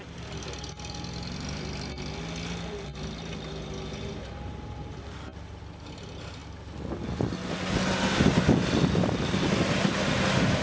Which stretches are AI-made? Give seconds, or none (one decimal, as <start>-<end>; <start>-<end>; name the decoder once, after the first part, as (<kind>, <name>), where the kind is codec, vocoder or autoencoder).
none